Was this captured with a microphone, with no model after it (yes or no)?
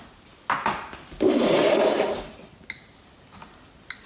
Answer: yes